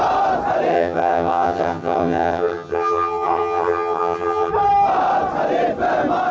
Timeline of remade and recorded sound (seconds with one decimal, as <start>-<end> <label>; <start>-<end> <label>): 0.0-0.7 recorded; 0.7-4.5 remade; 4.5-6.3 recorded